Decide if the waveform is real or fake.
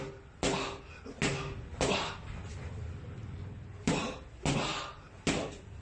real